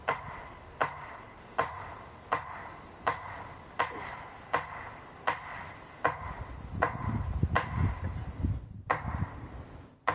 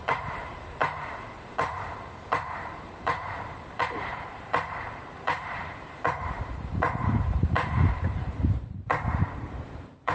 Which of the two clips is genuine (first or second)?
first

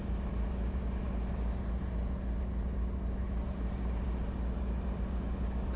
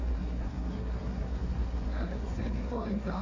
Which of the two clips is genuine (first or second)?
first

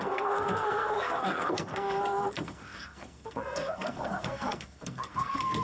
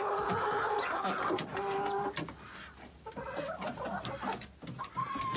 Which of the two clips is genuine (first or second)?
second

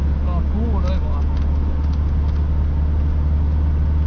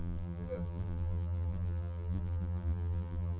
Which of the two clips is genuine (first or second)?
first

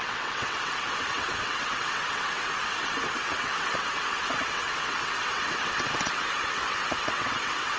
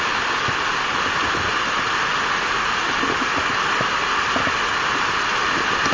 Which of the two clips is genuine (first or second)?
second